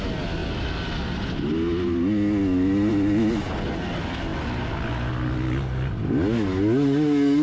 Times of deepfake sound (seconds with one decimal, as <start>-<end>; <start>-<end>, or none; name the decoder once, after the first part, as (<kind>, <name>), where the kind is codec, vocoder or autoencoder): none